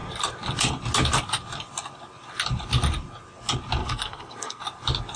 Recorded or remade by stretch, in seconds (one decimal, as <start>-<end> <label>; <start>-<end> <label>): 0.0-3.8 recorded; 3.8-4.6 remade; 4.6-5.2 recorded